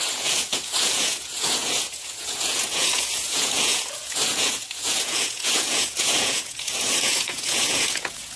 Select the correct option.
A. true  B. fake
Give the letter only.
B